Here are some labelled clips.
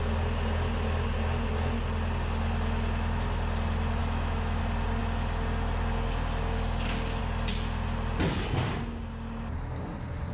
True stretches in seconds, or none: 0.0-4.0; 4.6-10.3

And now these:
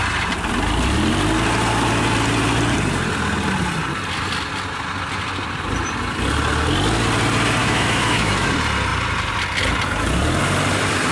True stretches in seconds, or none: 0.0-7.6; 8.5-11.1

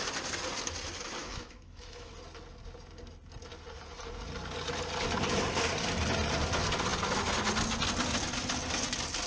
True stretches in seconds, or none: 0.0-1.2; 2.1-9.3

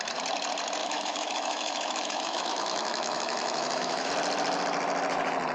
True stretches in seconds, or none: 0.0-0.8; 4.1-5.5

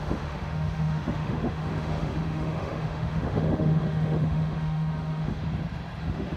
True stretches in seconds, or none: 5.4-6.0

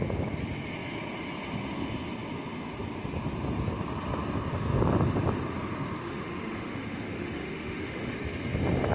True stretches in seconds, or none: 0.0-6.0; 8.1-8.9

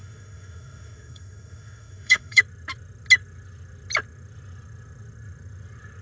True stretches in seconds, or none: 2.4-6.0

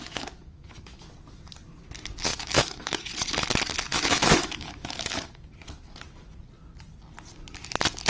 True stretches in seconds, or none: 1.1-2.3; 3.1-3.9; 5.5-8.1